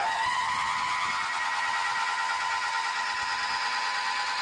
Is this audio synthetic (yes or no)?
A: no